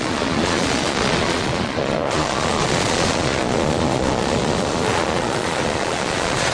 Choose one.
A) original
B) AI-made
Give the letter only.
B